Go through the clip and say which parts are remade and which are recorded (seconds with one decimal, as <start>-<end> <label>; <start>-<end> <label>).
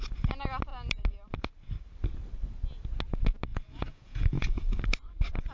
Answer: 0.0-3.5 recorded; 3.5-4.8 remade; 4.8-5.5 recorded